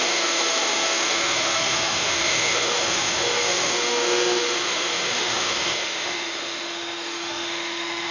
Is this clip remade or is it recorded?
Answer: remade